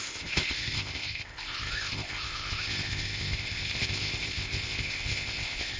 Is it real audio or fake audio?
fake